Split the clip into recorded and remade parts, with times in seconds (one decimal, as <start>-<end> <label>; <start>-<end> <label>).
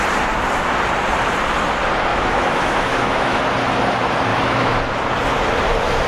0.0-2.1 recorded; 2.1-3.4 remade; 3.4-4.3 recorded; 4.3-4.8 remade; 4.8-6.1 recorded